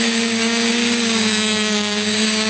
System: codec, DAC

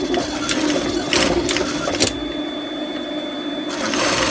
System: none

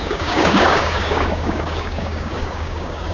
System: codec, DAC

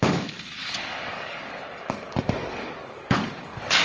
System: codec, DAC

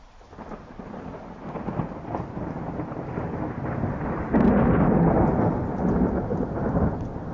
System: none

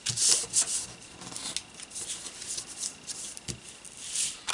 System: none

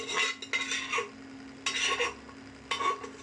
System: none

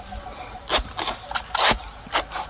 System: none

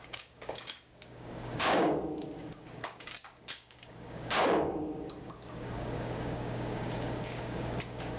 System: codec, DAC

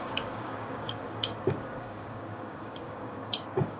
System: codec, DAC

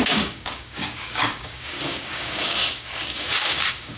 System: codec, DAC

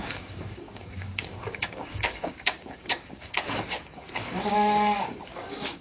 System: codec, DAC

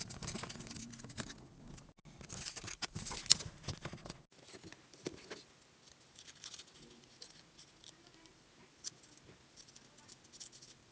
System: none